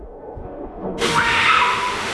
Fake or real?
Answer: fake